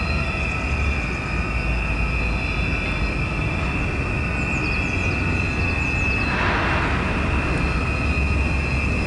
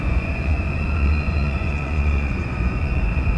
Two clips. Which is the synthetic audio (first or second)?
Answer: second